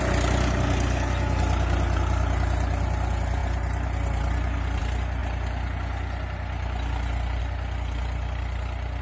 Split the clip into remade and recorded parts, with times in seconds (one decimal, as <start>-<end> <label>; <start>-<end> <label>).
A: 0.0-9.0 recorded